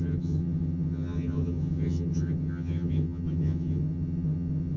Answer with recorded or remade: remade